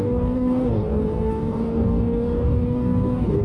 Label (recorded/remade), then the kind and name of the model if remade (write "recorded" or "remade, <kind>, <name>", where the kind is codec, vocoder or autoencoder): remade, codec, DAC